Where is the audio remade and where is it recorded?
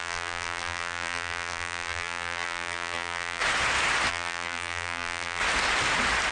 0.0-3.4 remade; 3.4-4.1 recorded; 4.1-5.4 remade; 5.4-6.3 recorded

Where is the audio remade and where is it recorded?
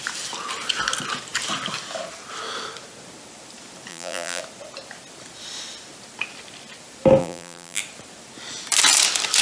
0.0-3.9 recorded; 3.9-4.4 remade; 4.4-7.2 recorded; 7.2-7.8 remade; 7.8-9.4 recorded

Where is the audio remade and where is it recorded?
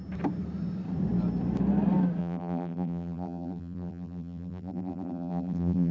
0.0-2.2 recorded; 2.2-5.9 remade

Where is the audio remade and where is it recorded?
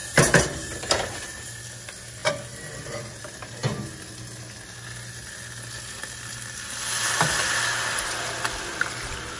0.0-1.6 remade; 1.6-9.4 recorded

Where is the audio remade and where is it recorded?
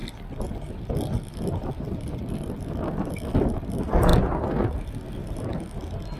0.0-3.5 remade; 3.5-6.2 recorded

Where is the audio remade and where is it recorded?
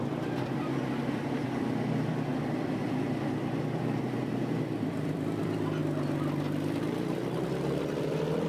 0.0-5.8 remade; 5.8-8.0 recorded; 8.0-8.5 remade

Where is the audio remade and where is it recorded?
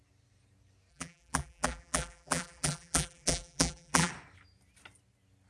0.0-0.9 recorded; 0.9-4.1 remade; 4.1-5.5 recorded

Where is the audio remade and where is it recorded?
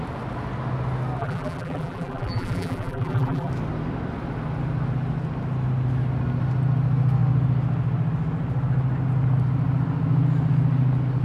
0.0-1.2 recorded; 1.2-3.5 remade; 3.5-11.2 recorded